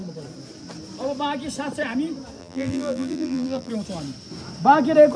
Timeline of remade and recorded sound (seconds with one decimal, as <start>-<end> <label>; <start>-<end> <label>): 0.0-2.4 recorded; 2.4-3.7 remade; 3.7-5.2 recorded